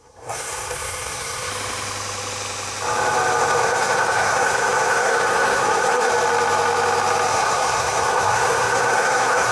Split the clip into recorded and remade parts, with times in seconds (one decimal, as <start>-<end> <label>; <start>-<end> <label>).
0.0-1.5 remade; 1.5-3.6 recorded; 3.6-6.1 remade; 6.1-7.3 recorded; 7.3-9.5 remade